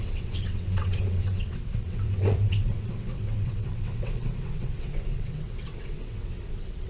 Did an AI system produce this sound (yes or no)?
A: yes